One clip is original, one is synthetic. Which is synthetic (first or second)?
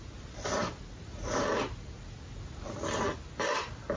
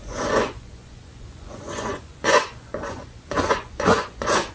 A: second